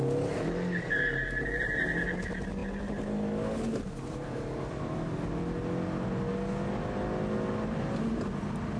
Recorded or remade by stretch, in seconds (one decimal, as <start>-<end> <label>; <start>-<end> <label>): 0.0-8.8 recorded